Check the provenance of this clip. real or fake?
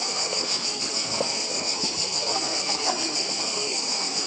fake